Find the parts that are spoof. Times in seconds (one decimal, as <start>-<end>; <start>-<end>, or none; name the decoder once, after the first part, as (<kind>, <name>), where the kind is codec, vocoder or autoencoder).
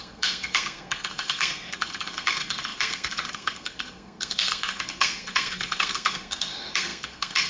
0.0-7.5 (codec, SNAC)